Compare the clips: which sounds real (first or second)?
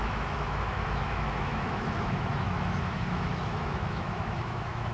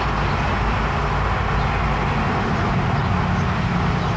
second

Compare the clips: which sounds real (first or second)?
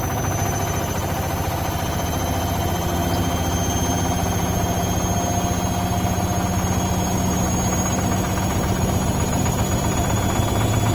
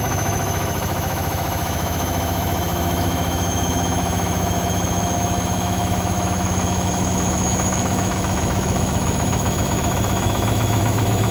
first